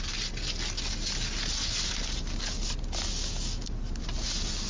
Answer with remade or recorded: recorded